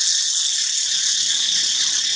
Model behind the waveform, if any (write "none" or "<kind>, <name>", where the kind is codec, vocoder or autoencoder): none